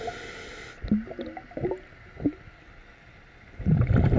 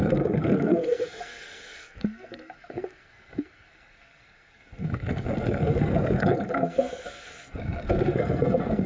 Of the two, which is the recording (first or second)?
first